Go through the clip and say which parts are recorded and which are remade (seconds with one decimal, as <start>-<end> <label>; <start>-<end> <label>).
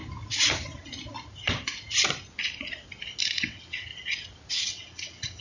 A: 0.0-3.2 recorded; 3.2-3.9 remade; 3.9-4.5 recorded; 4.5-5.4 remade